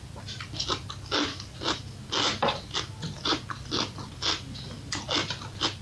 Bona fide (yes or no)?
yes